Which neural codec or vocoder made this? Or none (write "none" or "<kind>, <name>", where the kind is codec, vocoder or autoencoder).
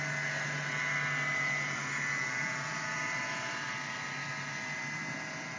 none